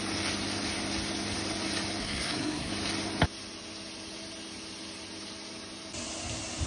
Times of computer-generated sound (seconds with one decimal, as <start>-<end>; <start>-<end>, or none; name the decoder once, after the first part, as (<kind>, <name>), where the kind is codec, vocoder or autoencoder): 2.0-2.7 (codec, SNAC)